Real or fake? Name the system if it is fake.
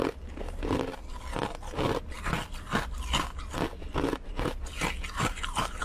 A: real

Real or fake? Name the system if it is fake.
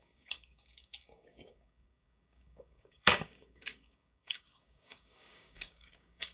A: fake, codec, DAC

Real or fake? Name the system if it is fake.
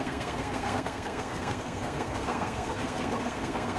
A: fake, codec, SNAC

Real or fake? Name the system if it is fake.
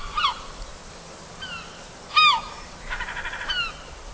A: real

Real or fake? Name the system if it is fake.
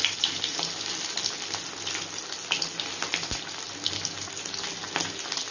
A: real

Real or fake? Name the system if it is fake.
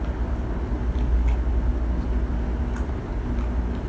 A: real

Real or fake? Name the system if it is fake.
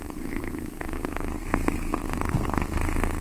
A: fake, codec, SNAC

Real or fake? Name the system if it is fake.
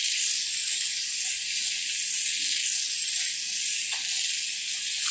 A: real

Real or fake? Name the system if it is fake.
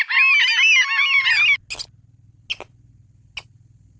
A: real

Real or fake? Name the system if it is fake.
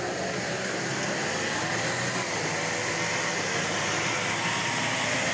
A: real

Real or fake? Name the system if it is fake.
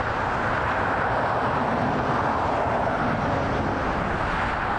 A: real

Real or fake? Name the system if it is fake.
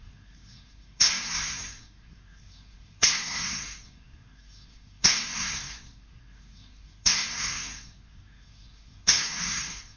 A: fake, codec, SNAC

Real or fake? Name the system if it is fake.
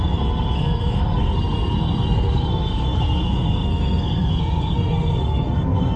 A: fake, codec, SNAC